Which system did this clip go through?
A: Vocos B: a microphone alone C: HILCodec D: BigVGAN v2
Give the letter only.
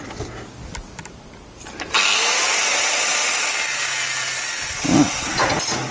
B